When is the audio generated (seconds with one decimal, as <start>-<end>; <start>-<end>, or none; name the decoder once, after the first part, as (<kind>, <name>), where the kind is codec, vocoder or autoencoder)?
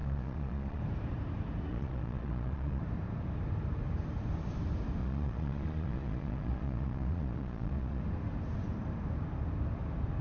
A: 0.0-0.8 (vocoder, Vocos); 1.7-2.8; 5.0-8.0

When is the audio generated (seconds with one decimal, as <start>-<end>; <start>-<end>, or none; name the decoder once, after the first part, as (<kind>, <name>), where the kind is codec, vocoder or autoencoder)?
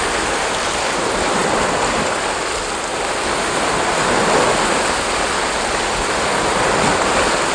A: none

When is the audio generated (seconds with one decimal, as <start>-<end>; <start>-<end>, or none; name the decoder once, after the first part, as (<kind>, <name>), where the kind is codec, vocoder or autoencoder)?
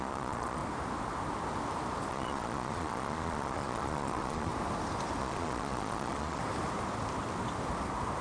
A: 0.0-0.6 (vocoder, Vocos); 2.1-4.5; 5.2-6.4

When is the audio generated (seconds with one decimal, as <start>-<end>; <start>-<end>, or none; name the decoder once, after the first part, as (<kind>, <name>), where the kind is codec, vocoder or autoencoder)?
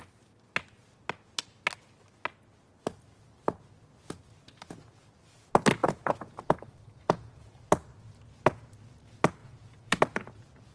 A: 5.8-7.6 (vocoder, Vocos); 9.4-10.0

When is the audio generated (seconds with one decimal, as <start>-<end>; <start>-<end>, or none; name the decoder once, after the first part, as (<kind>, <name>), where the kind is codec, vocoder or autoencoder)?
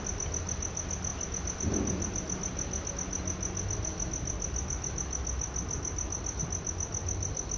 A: none